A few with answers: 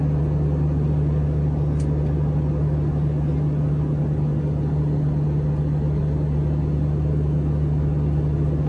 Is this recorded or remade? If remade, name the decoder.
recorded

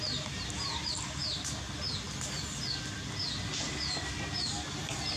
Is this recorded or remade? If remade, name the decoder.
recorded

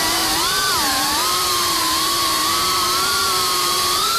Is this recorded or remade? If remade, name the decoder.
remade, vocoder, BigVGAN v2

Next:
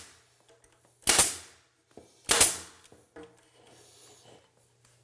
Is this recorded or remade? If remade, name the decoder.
recorded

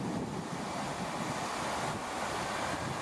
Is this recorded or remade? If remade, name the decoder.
recorded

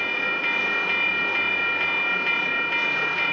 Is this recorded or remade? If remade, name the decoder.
recorded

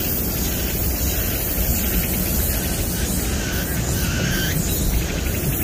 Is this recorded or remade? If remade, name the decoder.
recorded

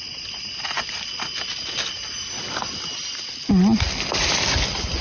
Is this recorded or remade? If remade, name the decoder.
recorded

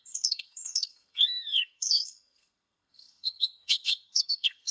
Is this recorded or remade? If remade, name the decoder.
remade, codec, SNAC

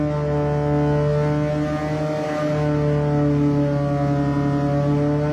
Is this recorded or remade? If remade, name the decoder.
recorded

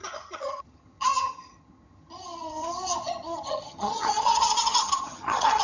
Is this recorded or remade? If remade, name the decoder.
remade, vocoder, HiFi-GAN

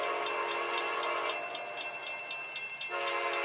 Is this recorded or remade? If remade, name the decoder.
recorded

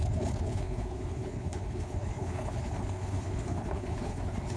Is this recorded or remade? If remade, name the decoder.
remade, codec, HILCodec